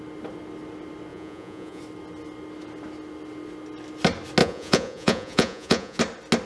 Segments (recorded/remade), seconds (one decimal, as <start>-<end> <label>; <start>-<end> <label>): 0.0-1.1 recorded; 1.1-1.8 remade; 1.8-4.4 recorded; 4.4-6.0 remade; 6.0-6.5 recorded